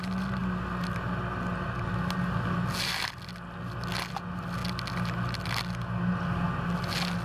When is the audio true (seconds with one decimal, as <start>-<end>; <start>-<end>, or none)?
0.0-7.2